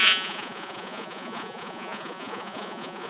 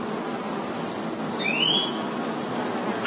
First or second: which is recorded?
second